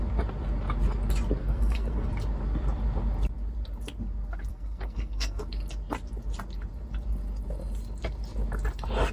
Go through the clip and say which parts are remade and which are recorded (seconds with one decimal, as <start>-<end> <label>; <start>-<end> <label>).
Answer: 0.0-1.4 recorded; 1.4-2.1 remade; 2.1-4.5 recorded; 4.5-5.4 remade; 5.4-9.1 recorded